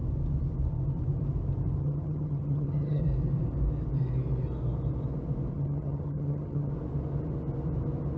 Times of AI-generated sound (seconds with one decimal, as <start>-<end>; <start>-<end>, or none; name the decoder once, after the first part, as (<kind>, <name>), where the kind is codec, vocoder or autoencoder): 1.8-3.0 (vocoder, HiFi-GAN); 5.5-6.7